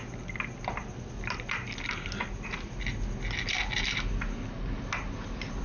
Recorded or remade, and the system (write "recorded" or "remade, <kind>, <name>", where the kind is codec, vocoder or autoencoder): recorded